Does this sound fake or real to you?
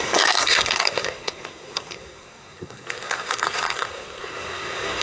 fake